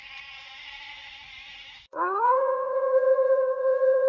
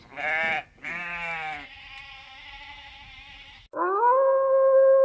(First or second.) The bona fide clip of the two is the second